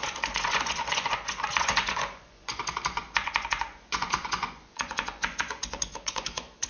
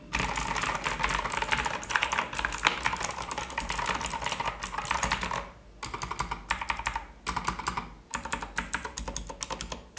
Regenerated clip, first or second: first